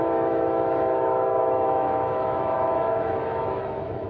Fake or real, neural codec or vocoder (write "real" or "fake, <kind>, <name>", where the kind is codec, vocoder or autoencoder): fake, autoencoder, DAC-VAE